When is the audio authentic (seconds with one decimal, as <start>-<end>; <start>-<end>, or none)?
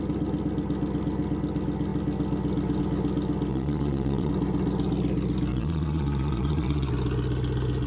0.0-3.5; 4.3-5.5; 6.9-7.9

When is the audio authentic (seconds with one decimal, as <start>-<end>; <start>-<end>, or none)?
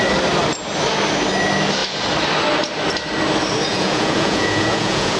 0.0-3.7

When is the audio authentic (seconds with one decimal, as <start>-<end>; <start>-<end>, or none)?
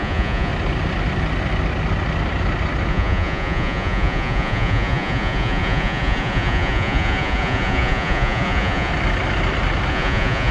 0.5-2.9; 8.9-9.9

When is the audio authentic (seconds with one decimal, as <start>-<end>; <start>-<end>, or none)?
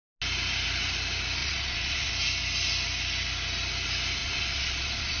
0.0-1.4; 2.1-4.2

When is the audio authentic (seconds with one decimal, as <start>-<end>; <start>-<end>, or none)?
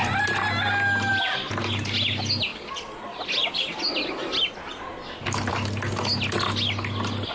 0.0-7.3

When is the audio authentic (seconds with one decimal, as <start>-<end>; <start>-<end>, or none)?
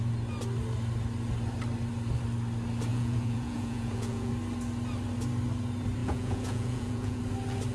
0.0-2.9; 4.3-6.0; 7.2-7.7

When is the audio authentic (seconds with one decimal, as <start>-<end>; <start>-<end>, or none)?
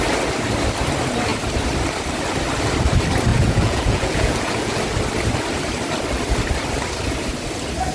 0.0-3.3; 4.8-7.9